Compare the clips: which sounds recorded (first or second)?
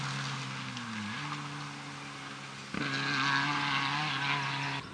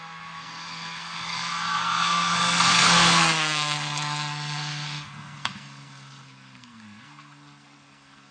first